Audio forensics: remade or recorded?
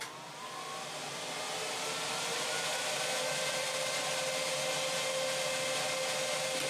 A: recorded